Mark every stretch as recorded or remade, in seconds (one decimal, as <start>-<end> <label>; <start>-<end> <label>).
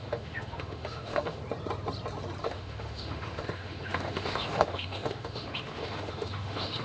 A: 0.0-1.4 remade; 1.4-2.4 recorded; 2.4-6.8 remade